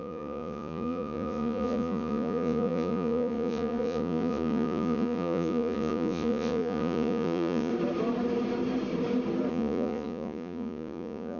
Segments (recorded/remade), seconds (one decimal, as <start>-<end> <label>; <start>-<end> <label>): 0.0-7.7 remade; 7.7-9.5 recorded; 9.5-11.4 remade